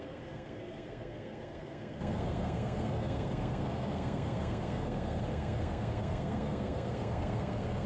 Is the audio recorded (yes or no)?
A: no